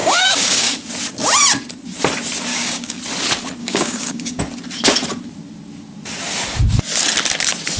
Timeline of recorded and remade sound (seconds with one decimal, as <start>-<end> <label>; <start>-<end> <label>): 0.0-0.7 remade; 0.7-2.5 recorded; 2.5-3.0 remade; 3.0-3.6 recorded; 3.6-4.4 remade; 4.4-7.8 recorded